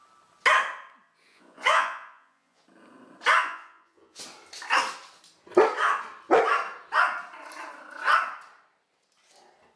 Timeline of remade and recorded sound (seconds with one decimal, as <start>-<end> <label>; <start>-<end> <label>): 0.0-1.3 recorded; 1.3-2.6 remade; 2.6-3.4 recorded; 3.4-4.2 remade; 4.2-9.8 recorded